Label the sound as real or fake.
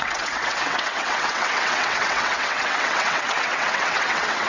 fake